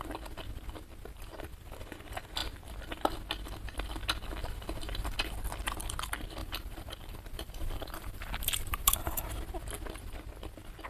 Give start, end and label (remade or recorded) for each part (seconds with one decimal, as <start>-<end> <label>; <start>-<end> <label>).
0.0-6.4 recorded; 6.4-9.3 remade; 9.3-10.9 recorded

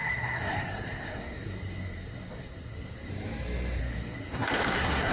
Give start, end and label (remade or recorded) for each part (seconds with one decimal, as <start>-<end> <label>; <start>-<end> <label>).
0.0-3.1 remade; 3.1-3.8 recorded; 3.8-5.1 remade

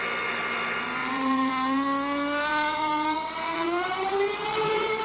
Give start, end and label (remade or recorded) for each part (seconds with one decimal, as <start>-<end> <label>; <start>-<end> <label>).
0.0-1.0 recorded; 1.0-1.5 remade; 1.5-2.5 recorded; 2.5-5.0 remade

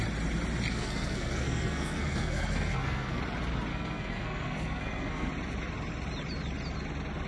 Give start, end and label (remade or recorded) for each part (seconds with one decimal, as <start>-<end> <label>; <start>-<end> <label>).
0.0-0.7 recorded; 0.7-3.2 remade; 3.2-3.7 recorded; 3.7-5.3 remade; 5.3-7.3 recorded

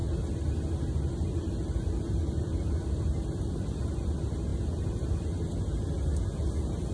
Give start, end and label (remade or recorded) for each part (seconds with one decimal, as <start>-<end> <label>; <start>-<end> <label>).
0.0-6.9 recorded